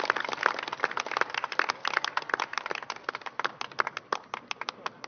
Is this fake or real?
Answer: real